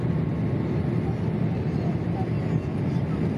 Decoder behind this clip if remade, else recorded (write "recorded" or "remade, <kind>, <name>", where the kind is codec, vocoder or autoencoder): recorded